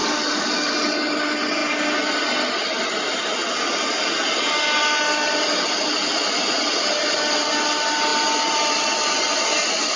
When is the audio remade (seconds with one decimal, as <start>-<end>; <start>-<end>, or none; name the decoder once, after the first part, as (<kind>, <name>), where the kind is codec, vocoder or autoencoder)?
0.0-0.7 (codec, DAC)